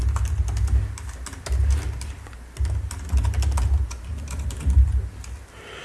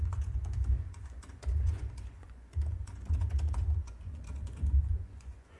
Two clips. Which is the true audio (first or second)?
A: first